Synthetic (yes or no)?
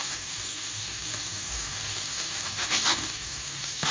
yes